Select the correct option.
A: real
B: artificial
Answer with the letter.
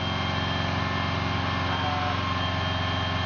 A